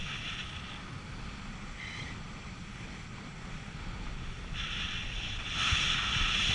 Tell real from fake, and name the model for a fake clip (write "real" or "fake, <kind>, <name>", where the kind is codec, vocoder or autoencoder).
real